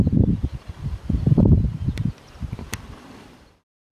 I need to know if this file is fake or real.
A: real